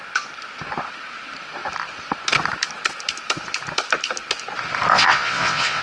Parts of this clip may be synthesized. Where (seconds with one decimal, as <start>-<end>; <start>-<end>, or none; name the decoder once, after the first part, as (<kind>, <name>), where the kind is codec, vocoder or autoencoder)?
4.9-5.8 (vocoder, WaveNeXt)